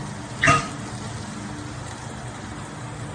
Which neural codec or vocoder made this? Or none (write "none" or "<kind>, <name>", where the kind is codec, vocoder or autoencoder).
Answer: none